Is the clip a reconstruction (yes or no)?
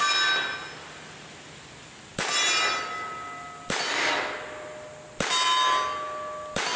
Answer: no